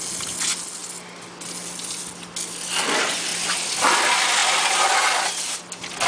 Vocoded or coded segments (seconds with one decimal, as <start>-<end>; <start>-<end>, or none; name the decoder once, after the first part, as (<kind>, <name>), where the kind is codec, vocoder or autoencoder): none